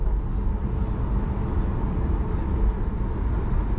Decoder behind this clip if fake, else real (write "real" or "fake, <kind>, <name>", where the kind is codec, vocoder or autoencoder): real